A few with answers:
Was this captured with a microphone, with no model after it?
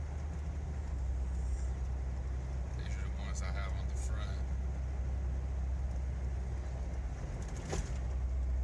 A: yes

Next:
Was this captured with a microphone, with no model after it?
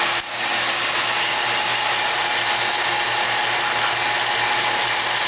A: yes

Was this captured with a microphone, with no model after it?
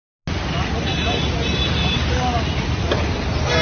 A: yes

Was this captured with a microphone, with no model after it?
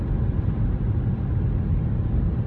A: yes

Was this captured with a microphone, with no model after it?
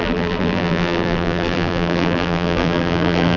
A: no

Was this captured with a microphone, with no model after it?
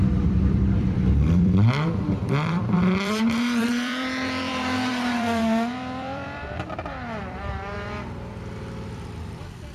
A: no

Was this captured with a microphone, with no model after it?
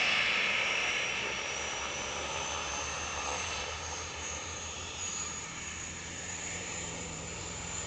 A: no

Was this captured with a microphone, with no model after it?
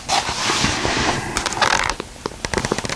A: yes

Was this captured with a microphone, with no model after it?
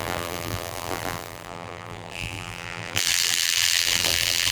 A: no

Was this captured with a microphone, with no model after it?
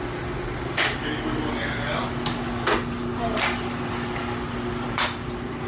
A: yes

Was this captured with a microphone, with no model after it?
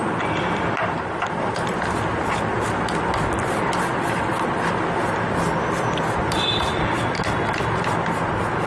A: yes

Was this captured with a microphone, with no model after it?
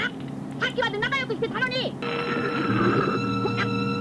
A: yes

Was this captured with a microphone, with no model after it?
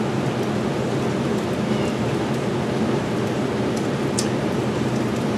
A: yes